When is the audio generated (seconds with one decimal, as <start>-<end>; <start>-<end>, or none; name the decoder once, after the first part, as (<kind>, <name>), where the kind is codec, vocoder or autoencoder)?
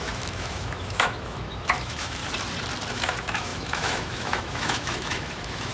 0.0-2.2 (autoencoder, DAC-VAE); 2.9-5.7